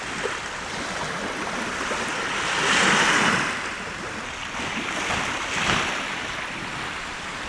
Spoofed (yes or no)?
no